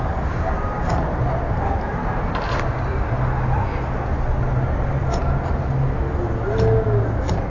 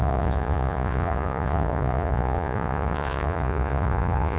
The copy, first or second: second